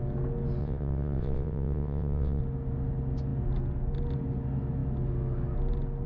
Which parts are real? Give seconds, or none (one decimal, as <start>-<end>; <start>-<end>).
0.0-0.6; 2.4-6.1